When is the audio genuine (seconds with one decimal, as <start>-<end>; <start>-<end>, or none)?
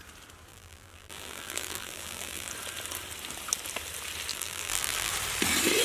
0.0-0.5; 2.5-4.3; 5.1-5.8